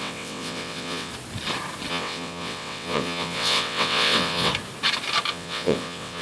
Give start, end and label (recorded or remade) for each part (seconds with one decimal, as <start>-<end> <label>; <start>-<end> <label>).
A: 0.0-1.1 remade; 1.1-1.9 recorded; 1.9-4.5 remade; 4.5-5.3 recorded; 5.3-6.2 remade